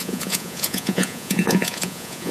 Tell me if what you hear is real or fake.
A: fake